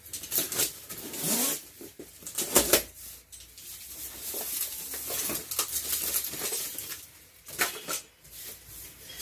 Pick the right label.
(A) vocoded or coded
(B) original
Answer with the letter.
B